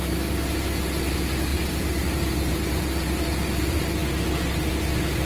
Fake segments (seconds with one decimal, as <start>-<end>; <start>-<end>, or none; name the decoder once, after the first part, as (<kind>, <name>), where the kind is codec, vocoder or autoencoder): 1.5-2.5 (vocoder, BigVGAN v2)